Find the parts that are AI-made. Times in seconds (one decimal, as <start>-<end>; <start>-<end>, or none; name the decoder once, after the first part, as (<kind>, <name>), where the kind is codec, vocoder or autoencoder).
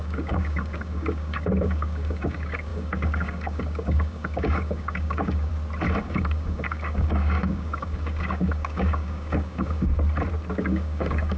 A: 0.0-5.5 (codec, DAC); 6.0-9.9; 10.5-11.4